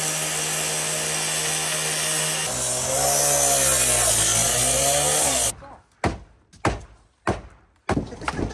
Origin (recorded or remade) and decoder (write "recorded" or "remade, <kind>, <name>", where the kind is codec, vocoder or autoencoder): recorded